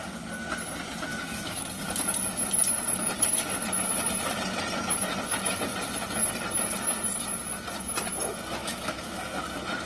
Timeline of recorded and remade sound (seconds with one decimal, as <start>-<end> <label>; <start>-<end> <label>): 0.0-1.1 recorded; 1.1-1.7 remade; 1.7-8.6 recorded; 8.6-9.4 remade; 9.4-9.9 recorded